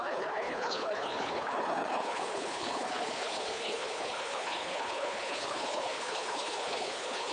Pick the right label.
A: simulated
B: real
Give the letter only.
A